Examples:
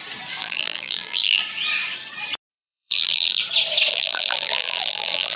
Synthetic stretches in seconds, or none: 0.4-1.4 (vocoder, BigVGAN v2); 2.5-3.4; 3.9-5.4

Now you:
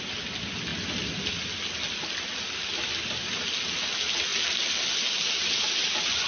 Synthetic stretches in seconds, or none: none

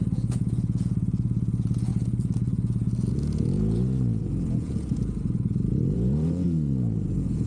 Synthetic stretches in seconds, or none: 0.0-7.5 (vocoder, Vocos)

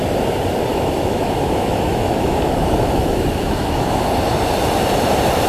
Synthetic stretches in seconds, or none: 0.7-4.0 (autoencoder, DAC-VAE)